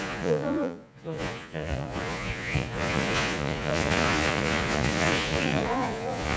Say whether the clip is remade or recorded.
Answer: remade